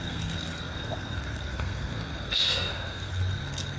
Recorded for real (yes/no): no